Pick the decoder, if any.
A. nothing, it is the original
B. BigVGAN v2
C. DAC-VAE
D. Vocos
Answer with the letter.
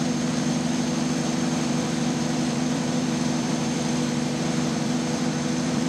B